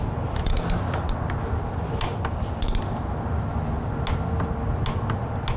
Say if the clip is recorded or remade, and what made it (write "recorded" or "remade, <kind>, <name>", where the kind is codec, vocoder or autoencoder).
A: recorded